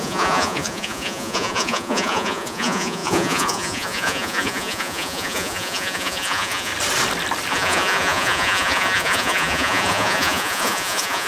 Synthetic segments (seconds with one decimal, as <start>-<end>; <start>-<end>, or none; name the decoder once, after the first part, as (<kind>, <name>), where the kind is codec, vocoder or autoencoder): 0.0-6.7 (vocoder, Vocos); 7.5-11.3